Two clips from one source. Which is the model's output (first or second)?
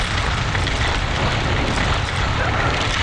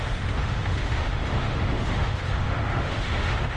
second